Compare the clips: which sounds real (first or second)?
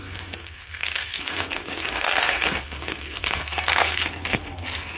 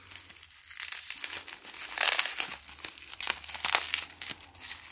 second